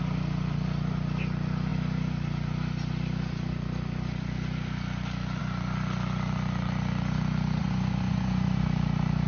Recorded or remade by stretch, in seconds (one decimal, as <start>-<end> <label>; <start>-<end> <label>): 0.0-7.6 recorded; 7.6-8.6 remade; 8.6-9.3 recorded